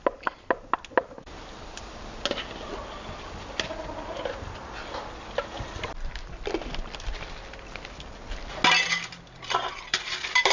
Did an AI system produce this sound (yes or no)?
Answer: no